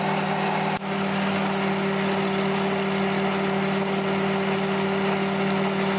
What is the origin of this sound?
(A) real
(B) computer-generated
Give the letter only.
A